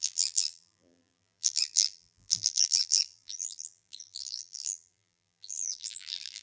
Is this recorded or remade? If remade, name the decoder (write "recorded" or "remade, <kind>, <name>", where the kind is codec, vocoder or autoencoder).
remade, vocoder, BigVGAN v2